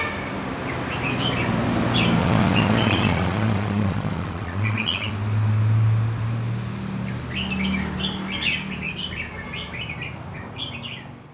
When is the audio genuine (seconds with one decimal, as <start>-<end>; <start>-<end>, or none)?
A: 0.0-2.2; 5.1-11.3